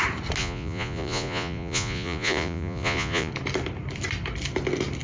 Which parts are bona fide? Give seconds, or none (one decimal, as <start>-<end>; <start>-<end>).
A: 0.0-0.4; 3.3-5.0